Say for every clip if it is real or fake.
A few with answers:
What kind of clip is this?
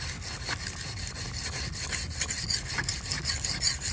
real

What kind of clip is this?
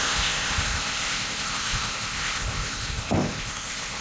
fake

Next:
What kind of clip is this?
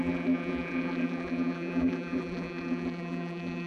fake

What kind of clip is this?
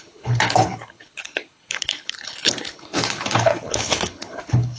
fake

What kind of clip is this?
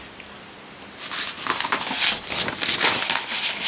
real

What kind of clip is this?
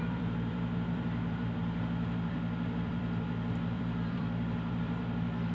fake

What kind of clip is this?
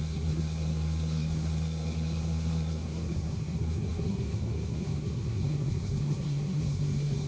fake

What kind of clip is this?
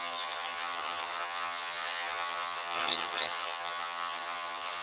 fake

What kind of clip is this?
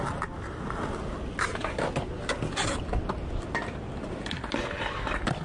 real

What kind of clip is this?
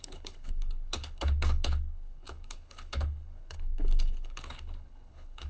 fake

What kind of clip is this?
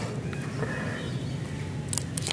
real